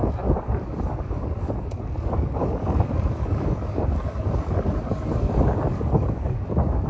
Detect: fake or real fake